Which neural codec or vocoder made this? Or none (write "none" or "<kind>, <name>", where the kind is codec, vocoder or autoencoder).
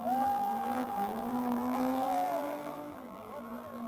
vocoder, BigVGAN v2